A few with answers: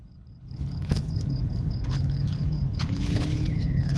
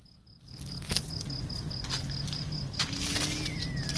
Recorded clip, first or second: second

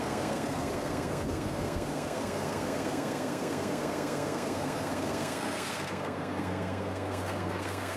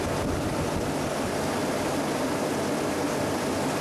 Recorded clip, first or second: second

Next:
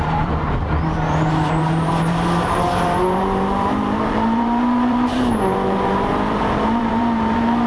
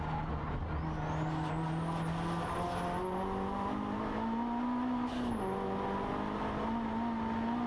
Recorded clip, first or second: second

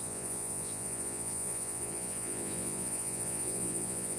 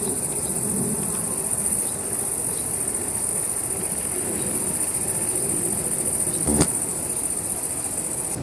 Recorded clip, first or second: second